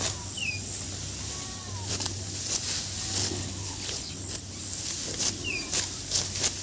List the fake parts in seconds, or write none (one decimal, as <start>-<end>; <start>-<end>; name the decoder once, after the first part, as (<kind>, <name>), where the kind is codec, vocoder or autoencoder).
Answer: 3.2-4.1 (codec, HILCodec)